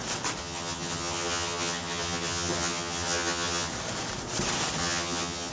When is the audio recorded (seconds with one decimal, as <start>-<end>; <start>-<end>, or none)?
0.0-0.4; 3.7-4.8